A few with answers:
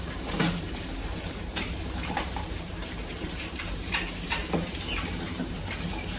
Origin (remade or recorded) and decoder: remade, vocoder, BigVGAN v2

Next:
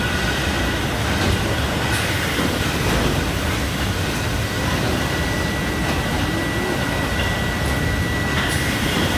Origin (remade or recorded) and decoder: recorded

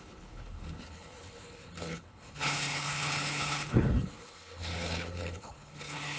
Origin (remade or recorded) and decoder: remade, codec, HILCodec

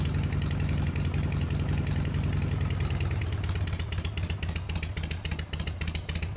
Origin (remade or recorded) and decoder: recorded